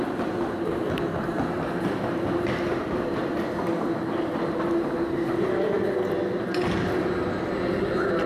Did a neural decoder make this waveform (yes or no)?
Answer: no